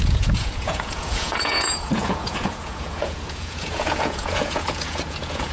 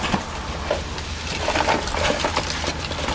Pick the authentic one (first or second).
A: second